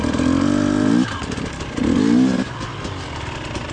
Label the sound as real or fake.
real